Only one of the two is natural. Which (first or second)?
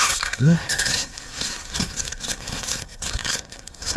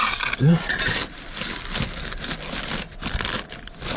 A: second